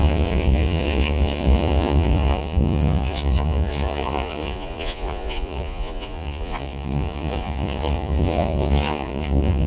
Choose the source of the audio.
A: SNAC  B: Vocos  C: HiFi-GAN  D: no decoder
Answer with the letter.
B